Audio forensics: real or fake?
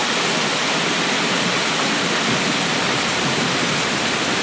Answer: real